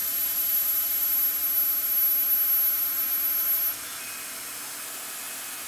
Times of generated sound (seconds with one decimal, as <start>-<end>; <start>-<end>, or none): none